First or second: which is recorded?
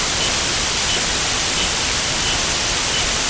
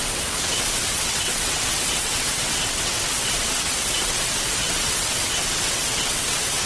first